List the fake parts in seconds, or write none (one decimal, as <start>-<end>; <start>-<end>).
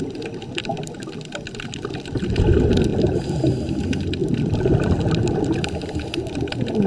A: 0.4-2.3; 2.9-3.7; 4.2-6.9